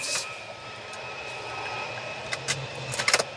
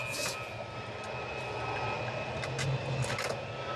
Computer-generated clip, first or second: first